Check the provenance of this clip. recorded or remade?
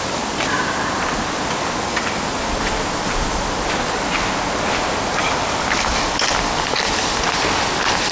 recorded